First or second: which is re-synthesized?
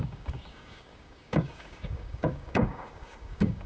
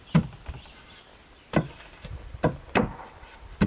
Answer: first